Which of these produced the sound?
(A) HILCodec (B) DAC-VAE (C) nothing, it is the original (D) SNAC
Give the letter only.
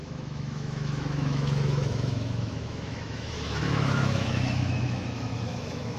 B